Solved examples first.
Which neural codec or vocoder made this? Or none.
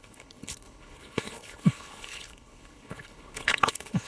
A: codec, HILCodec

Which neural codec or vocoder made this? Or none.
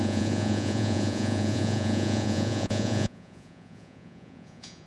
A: vocoder, Vocos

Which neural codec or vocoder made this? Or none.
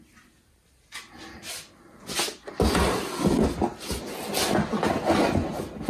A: none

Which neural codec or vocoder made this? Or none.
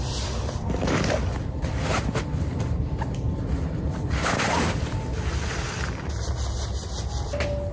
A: none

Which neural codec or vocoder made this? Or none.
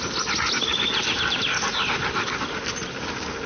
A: none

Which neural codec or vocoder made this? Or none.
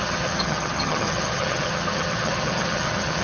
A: vocoder, HiFi-GAN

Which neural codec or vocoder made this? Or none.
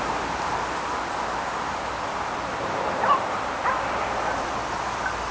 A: none